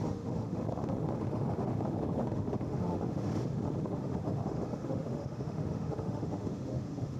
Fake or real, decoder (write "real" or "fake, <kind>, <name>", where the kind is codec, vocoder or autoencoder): fake, autoencoder, DAC-VAE